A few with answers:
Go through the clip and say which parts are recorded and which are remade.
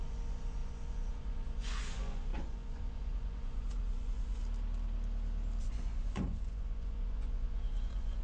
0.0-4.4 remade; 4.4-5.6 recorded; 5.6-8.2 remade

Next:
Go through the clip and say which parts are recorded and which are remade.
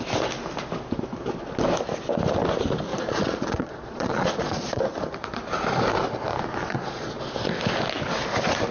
0.0-2.9 recorded; 2.9-4.8 remade; 4.8-6.6 recorded; 6.6-7.2 remade; 7.2-8.7 recorded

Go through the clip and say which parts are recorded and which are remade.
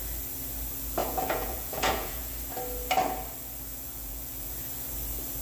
0.0-1.0 recorded; 1.0-2.3 remade; 2.3-3.7 recorded; 3.7-4.9 remade; 4.9-5.4 recorded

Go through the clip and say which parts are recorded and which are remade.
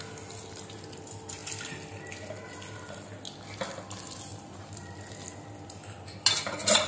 0.0-6.9 recorded